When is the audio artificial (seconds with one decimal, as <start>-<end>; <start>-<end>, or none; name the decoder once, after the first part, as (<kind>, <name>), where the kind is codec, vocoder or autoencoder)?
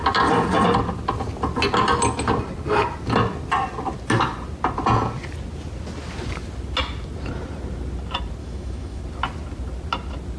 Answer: 8.4-9.0 (autoencoder, DAC-VAE)